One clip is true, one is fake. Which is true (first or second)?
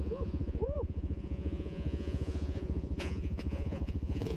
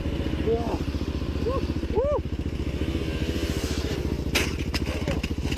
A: second